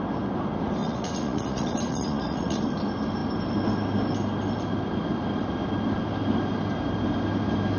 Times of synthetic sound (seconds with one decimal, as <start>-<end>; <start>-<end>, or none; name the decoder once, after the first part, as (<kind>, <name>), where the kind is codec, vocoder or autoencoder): 0.8-2.6 (vocoder, Vocos)